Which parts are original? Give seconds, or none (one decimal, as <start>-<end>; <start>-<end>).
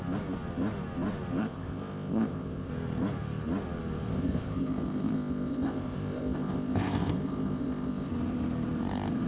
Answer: 0.0-1.4; 2.7-4.1; 8.1-9.3